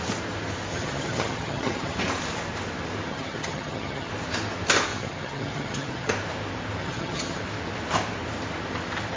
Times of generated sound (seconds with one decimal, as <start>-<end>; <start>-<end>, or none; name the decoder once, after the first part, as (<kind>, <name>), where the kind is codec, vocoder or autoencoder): 0.7-2.0 (vocoder, HiFi-GAN); 3.1-4.1; 4.9-6.1; 6.8-7.4